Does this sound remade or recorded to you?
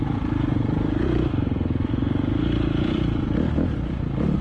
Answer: remade